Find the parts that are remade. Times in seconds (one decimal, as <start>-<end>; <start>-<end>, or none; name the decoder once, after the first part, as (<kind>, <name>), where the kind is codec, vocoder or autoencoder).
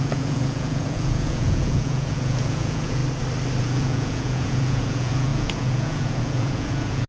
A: 0.0-3.0 (vocoder, Vocos); 3.6-7.1